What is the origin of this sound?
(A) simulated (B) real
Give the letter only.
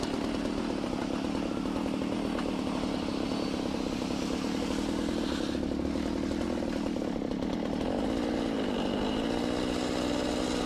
B